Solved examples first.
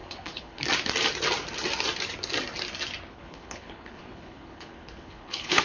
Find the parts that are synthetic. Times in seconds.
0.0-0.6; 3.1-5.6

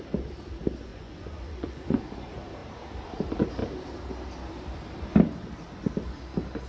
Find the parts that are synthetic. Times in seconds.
0.9-2.0

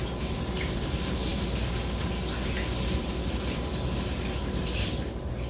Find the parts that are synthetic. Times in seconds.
none

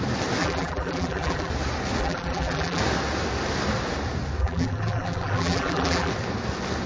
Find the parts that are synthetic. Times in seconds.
0.4-1.5; 2.0-2.8; 4.4-6.1

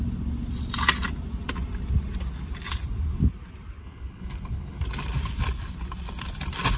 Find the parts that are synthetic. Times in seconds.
3.8-4.8

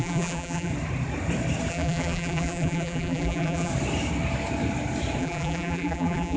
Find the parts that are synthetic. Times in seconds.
0.0-0.7; 1.7-3.7; 5.2-6.4